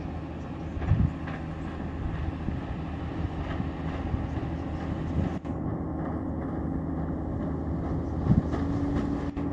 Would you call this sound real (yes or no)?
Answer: yes